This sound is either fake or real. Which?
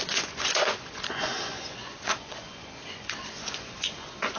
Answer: fake